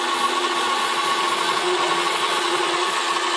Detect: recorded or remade remade